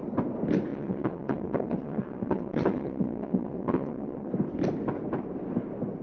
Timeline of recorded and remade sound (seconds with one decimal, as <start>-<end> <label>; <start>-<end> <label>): 0.0-0.7 recorded; 0.7-4.3 remade; 4.3-6.0 recorded